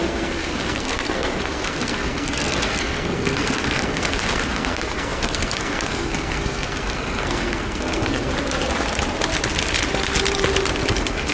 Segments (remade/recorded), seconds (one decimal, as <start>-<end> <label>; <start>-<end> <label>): 0.0-8.3 remade; 8.3-10.9 recorded; 10.9-11.3 remade